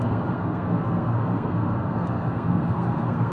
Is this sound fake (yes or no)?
yes